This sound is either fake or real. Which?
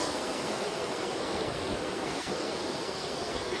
fake